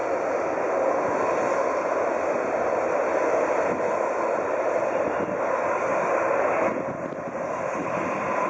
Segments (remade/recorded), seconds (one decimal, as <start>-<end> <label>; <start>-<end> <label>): 0.0-8.5 recorded